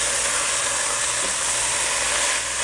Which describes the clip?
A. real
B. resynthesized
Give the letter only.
A